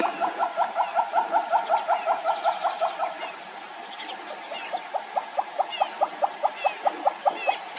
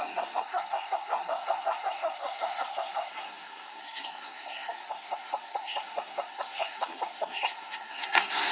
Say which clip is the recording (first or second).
first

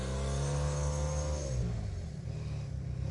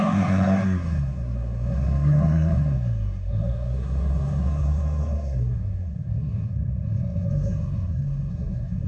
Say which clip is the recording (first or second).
first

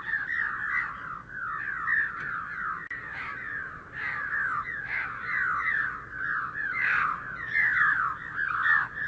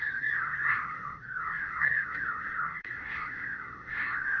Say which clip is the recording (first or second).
first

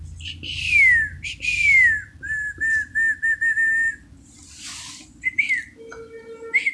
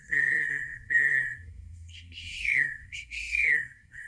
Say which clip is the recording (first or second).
first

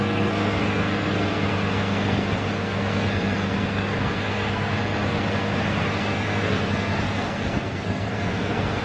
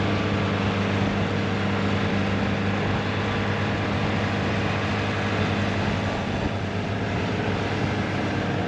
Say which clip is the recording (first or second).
second